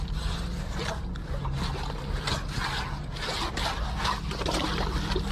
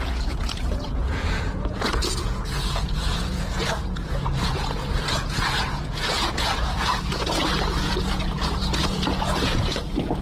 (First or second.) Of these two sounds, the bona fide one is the first